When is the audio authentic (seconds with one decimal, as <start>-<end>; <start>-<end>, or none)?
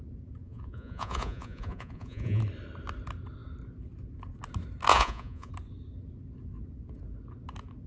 0.0-0.4; 2.4-4.9; 5.5-7.9